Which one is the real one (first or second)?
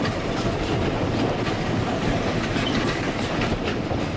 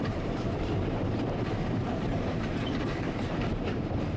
first